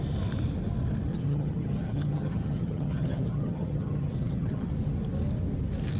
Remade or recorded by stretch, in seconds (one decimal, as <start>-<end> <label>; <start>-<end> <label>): 0.0-1.1 recorded; 1.1-4.7 remade; 4.7-6.0 recorded